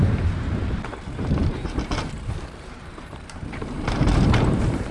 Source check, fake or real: fake